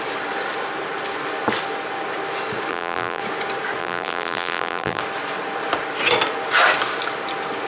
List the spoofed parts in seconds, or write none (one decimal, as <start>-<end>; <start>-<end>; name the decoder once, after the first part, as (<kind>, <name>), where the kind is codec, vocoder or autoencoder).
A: 2.7-3.2 (vocoder, BigVGAN v2); 3.8-5.0